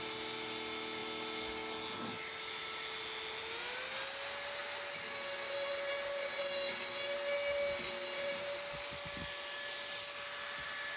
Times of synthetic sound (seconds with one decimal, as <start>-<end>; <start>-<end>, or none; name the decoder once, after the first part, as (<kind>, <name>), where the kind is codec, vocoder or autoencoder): none